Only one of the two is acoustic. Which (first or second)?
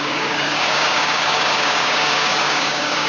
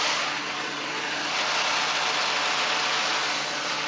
second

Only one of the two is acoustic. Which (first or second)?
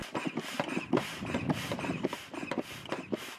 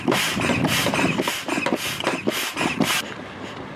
second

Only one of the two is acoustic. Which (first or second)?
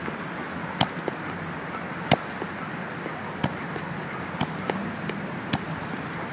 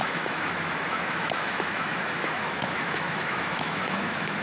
first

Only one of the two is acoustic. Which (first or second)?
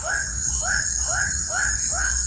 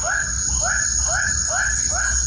second